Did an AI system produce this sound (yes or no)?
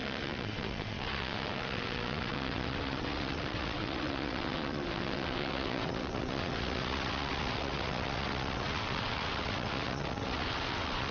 yes